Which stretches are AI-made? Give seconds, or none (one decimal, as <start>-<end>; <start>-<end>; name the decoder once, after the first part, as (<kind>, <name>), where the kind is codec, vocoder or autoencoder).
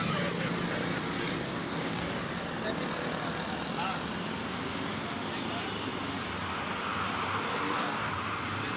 1.6-2.2 (codec, DAC); 7.5-8.1